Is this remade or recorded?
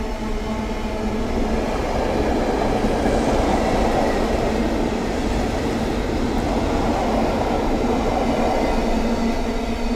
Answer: recorded